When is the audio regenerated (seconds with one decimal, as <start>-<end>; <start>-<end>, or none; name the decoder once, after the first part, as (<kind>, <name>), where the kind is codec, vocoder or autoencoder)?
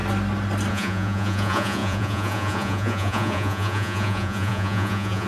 0.7-5.3 (vocoder, Vocos)